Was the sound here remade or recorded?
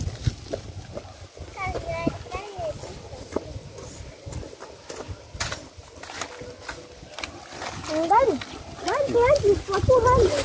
recorded